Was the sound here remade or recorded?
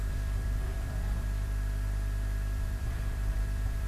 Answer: remade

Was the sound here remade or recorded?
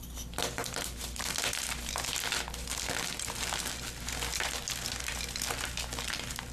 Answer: recorded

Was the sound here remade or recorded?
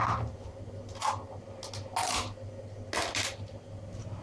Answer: recorded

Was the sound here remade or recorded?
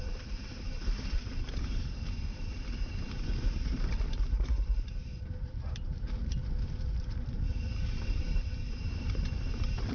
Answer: remade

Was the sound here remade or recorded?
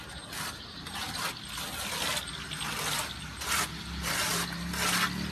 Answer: recorded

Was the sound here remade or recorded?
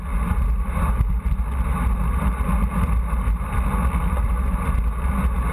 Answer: recorded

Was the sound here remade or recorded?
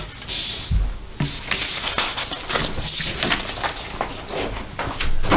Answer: recorded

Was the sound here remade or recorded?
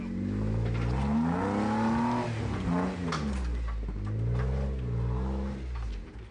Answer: recorded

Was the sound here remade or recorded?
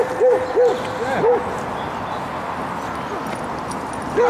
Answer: recorded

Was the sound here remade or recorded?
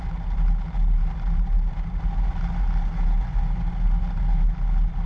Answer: recorded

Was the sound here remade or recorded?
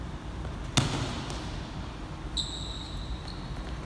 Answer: recorded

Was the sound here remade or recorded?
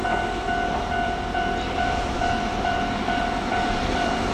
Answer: remade